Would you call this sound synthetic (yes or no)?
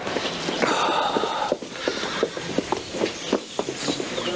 no